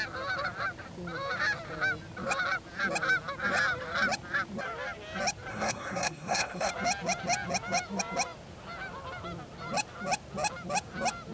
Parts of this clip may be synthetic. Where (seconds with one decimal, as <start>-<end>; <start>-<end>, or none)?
5.5-6.7